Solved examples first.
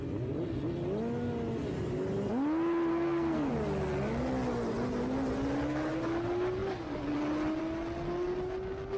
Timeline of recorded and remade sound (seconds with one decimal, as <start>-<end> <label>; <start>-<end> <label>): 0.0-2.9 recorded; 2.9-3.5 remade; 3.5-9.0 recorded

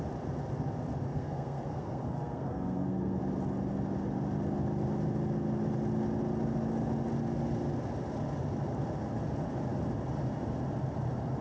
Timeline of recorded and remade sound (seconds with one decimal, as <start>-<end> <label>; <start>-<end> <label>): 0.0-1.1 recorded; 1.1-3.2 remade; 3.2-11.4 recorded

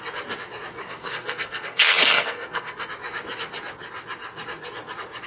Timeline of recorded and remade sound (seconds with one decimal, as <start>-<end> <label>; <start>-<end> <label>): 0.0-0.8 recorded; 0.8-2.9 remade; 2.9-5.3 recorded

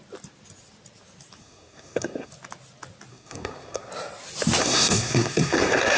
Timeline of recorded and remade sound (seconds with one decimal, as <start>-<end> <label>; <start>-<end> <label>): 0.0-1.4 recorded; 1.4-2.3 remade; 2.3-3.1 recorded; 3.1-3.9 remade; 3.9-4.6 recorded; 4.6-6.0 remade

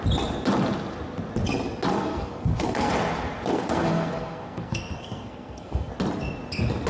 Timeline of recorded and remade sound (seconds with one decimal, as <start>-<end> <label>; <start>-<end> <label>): 0.0-1.9 recorded; 1.9-2.9 remade; 2.9-3.5 recorded; 3.5-5.9 remade; 5.9-6.9 recorded